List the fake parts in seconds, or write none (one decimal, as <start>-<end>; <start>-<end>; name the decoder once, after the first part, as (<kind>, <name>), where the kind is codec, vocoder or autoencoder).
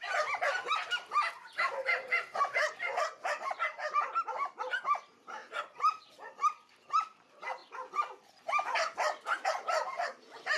none